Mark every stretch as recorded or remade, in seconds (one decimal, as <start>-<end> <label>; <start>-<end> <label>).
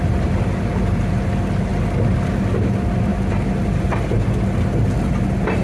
0.0-5.6 recorded